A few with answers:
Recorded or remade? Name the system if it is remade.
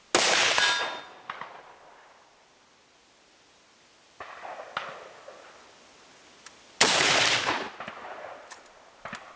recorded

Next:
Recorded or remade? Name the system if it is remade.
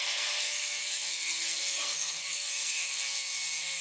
remade, codec, SNAC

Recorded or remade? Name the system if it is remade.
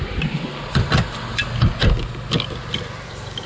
recorded